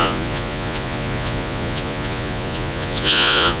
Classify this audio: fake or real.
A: fake